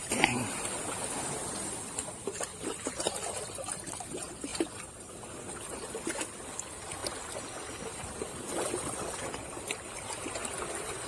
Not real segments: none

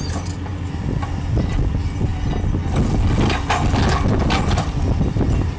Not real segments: none

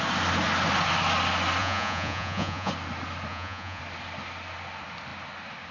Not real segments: 1.6-2.7; 3.3-3.8

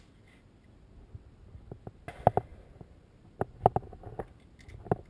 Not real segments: none

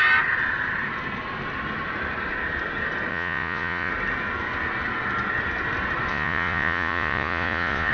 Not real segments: 3.1-3.9; 6.1-7.9

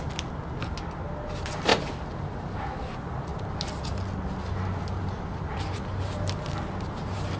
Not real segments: none